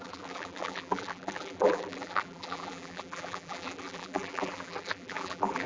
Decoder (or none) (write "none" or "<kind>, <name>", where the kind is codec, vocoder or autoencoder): vocoder, BigVGAN v2